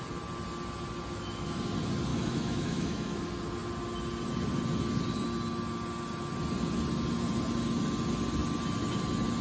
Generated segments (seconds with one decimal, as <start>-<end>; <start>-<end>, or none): 2.1-3.2